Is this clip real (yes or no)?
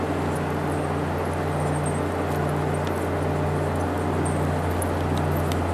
yes